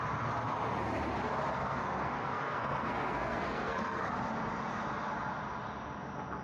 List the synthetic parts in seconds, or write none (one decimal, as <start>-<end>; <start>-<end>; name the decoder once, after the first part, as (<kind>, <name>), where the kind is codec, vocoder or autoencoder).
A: 1.5-4.1 (codec, SNAC)